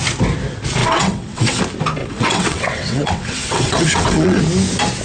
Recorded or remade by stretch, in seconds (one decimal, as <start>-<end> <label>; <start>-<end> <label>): 0.0-0.8 recorded; 0.8-1.6 remade; 1.6-2.0 recorded; 2.0-4.4 remade; 4.4-5.0 recorded